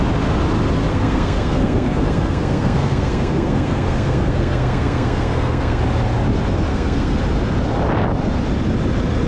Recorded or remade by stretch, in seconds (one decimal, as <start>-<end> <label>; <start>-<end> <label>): 0.0-0.9 recorded; 0.9-5.8 remade; 5.8-6.7 recorded; 6.7-7.2 remade; 7.2-9.3 recorded